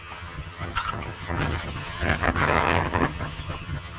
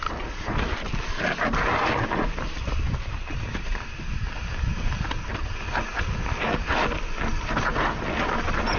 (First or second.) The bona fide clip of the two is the second